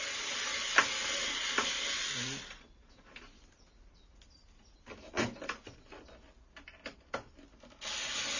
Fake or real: real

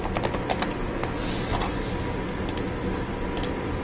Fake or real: real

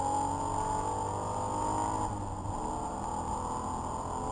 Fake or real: real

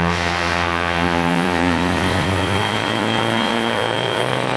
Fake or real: fake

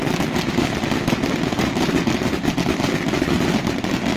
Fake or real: real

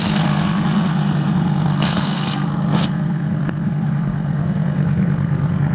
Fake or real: fake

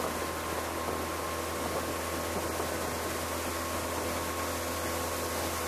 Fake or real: real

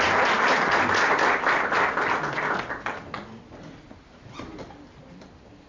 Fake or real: real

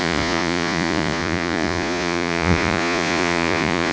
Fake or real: fake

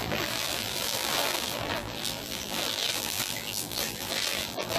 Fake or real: fake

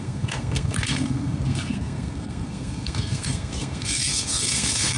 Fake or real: fake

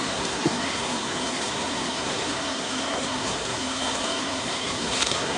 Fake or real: fake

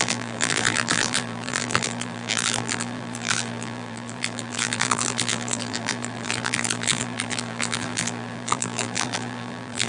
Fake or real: fake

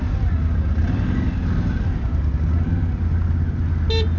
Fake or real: real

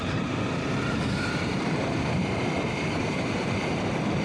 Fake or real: fake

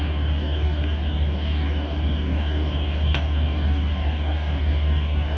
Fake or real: fake